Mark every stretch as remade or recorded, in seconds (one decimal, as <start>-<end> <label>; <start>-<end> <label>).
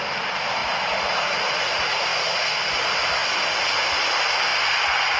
0.0-5.2 recorded